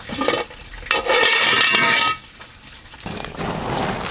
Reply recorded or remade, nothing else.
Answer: recorded